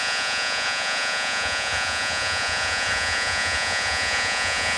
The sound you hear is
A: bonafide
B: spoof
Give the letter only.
B